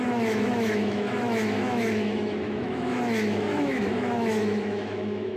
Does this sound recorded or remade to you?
remade